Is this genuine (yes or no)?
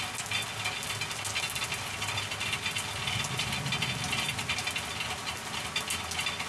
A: yes